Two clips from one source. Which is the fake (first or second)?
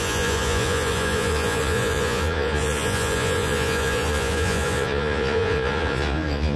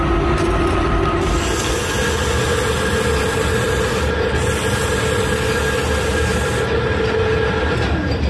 first